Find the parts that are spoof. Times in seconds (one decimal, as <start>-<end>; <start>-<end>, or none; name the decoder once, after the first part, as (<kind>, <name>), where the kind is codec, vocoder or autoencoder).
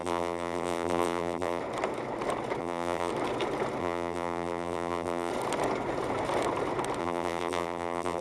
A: 0.0-1.6 (vocoder, BigVGAN v2); 2.6-3.1; 3.8-5.3; 7.0-8.2